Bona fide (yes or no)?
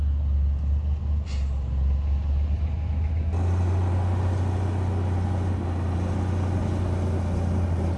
yes